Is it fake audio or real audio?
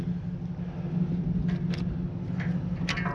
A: real